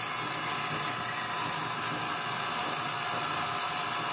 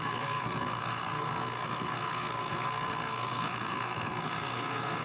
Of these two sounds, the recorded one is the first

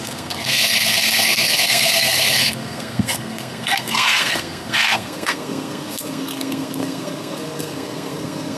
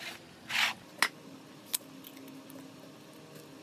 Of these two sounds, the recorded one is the second